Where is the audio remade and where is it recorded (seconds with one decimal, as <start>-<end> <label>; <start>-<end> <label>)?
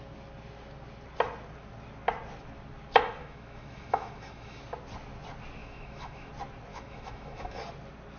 0.0-3.2 recorded; 3.2-4.6 remade; 4.6-5.6 recorded; 5.6-6.3 remade; 6.3-6.7 recorded; 6.7-7.6 remade; 7.6-8.2 recorded